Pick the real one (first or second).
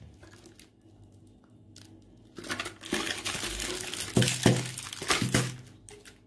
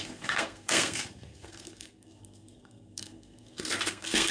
first